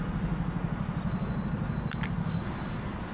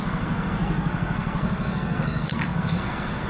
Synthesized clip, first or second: second